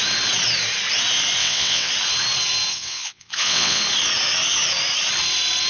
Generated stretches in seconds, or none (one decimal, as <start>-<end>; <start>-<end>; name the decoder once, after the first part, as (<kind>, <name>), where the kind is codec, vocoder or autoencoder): 1.4-1.9 (vocoder, WaveNeXt); 2.7-3.8